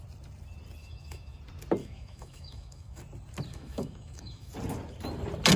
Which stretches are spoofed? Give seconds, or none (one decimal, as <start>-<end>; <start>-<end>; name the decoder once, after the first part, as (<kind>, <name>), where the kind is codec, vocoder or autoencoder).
0.8-1.4 (autoencoder, DAC-VAE); 1.8-3.0; 3.5-4.5